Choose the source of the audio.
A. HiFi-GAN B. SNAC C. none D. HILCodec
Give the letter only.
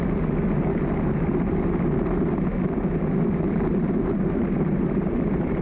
C